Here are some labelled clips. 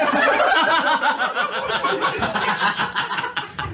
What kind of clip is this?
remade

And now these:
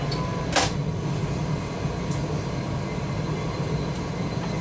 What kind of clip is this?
recorded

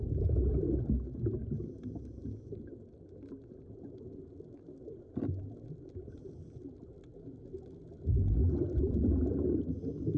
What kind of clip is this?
recorded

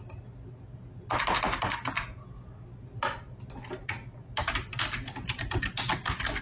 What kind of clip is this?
recorded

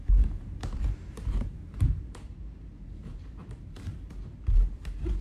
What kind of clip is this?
remade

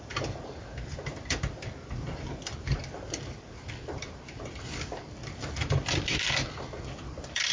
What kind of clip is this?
remade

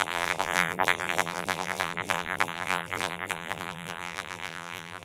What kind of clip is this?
remade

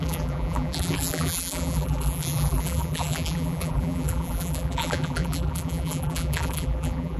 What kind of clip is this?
remade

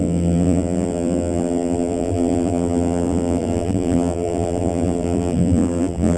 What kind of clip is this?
remade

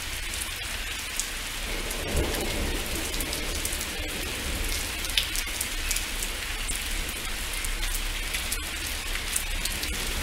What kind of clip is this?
recorded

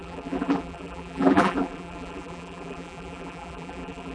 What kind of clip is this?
remade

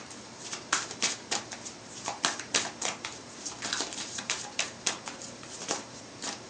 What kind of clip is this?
remade